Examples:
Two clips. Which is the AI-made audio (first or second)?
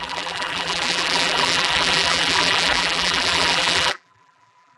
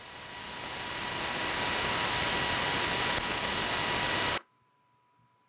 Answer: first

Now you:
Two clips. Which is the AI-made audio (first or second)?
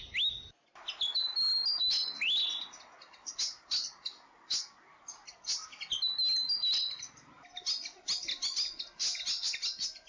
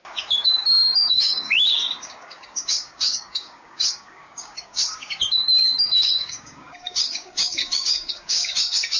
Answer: second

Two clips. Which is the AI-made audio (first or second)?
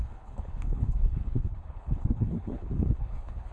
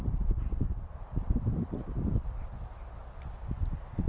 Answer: first